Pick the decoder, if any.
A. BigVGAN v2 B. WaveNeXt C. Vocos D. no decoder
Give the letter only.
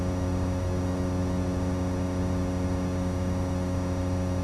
D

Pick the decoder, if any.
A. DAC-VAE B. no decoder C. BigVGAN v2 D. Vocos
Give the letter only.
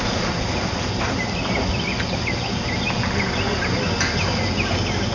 B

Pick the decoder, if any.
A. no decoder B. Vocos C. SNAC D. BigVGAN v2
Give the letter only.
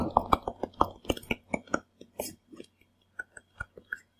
A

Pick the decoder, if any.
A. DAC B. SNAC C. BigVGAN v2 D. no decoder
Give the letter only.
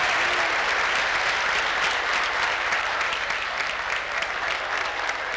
D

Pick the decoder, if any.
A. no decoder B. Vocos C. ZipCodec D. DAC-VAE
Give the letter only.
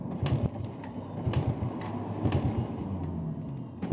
A